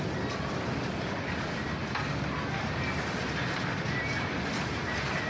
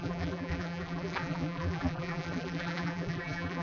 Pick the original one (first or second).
first